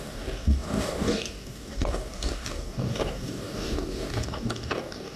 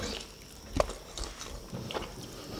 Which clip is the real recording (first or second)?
second